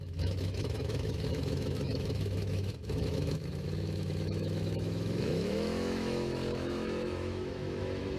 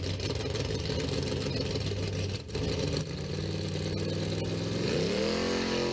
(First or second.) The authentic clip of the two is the second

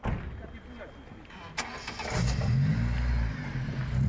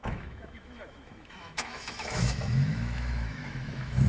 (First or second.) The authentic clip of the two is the first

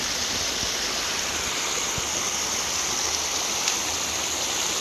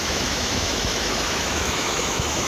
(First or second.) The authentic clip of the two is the first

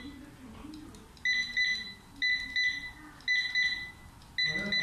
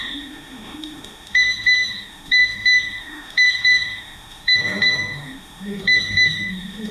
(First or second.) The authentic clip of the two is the first